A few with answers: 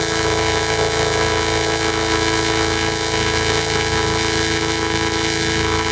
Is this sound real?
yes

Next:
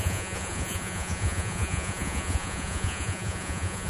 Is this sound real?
no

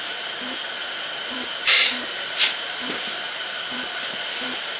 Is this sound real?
no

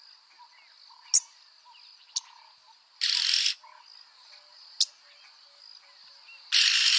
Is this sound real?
yes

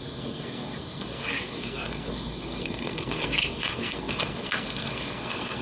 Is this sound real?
no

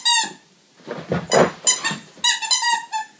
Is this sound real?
yes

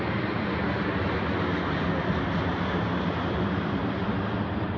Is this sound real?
yes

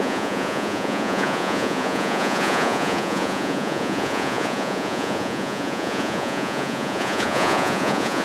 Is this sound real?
no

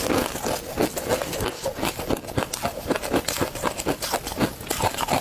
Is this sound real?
yes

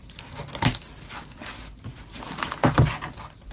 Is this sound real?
yes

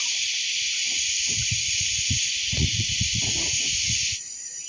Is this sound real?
no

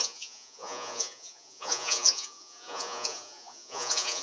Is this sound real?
no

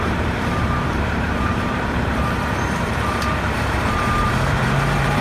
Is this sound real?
no